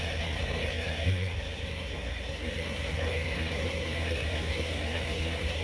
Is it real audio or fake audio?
fake